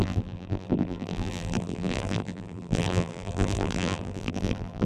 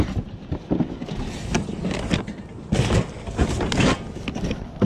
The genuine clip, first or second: second